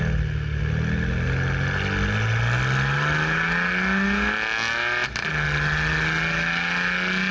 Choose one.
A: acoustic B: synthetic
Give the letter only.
A